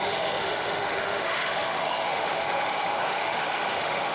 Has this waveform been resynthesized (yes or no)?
yes